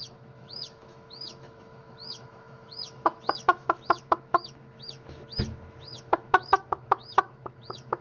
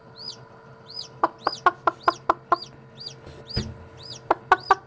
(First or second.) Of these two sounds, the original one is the second